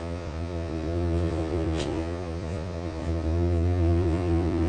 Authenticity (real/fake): fake